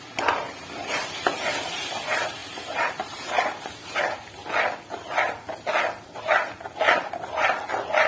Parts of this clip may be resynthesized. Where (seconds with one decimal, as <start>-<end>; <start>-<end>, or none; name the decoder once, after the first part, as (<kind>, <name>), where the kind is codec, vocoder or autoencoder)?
0.0-4.4 (vocoder, BigVGAN v2)